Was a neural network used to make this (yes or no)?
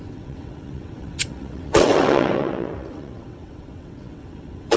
yes